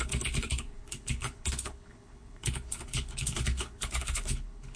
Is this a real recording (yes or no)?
no